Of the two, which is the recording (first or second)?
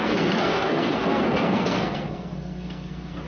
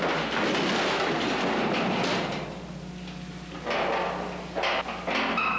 second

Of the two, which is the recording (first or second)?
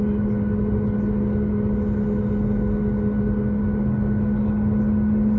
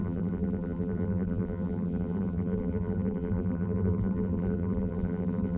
first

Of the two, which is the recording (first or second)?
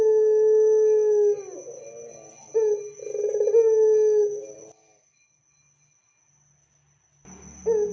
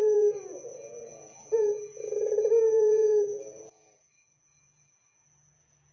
first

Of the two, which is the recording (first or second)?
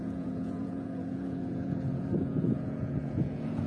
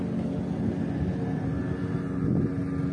second